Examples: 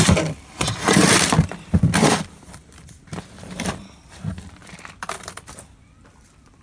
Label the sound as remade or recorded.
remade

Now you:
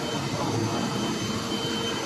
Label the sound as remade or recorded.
recorded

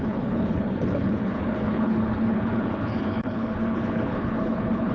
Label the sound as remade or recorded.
remade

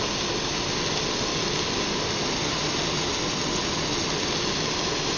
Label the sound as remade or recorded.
recorded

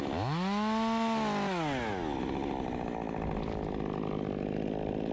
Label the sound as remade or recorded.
recorded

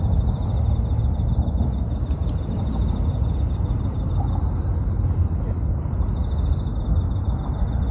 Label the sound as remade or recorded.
recorded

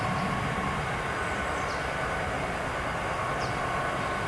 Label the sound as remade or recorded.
recorded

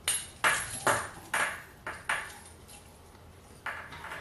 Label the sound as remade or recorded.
recorded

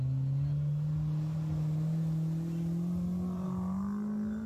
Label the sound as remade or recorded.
recorded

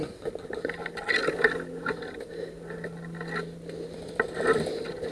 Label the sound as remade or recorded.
recorded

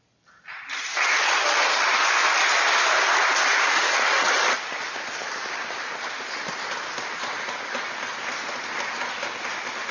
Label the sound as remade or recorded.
recorded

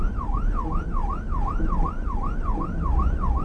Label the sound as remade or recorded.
recorded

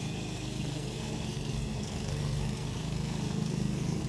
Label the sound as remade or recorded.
remade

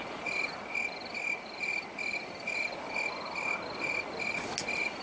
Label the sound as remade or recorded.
recorded